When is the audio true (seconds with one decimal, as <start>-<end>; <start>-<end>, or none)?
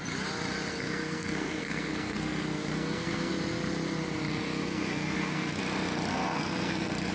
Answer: 0.0-0.7; 3.3-4.6; 5.6-6.1